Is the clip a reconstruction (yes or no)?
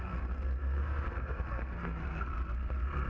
yes